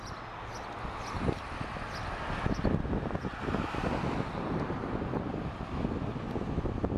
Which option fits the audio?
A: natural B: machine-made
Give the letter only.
A